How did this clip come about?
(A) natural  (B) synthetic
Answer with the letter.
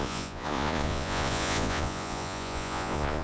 B